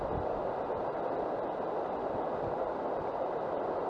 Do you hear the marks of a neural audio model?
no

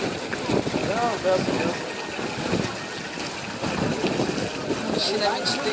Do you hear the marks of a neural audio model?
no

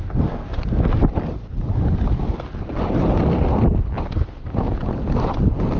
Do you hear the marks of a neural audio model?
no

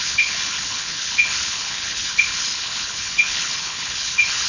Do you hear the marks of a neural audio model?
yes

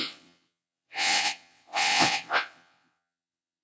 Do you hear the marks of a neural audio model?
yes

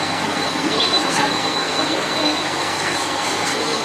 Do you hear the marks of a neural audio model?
yes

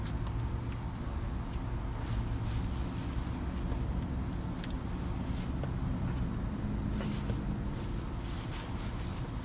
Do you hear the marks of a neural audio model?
no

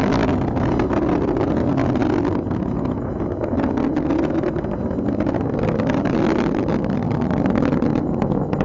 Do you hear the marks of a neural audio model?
no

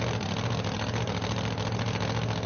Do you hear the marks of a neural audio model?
no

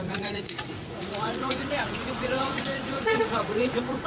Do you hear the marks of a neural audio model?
yes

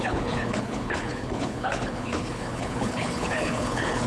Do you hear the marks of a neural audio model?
yes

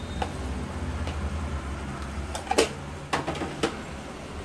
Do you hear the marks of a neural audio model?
no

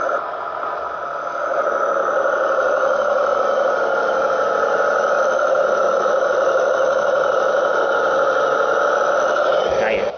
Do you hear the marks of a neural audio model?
no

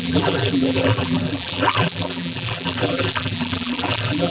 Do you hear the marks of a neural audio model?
yes